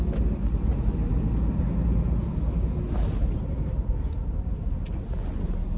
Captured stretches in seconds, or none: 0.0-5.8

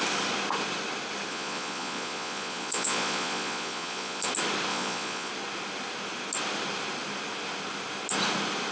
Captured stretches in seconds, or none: 0.0-1.3; 4.3-4.7; 5.3-8.7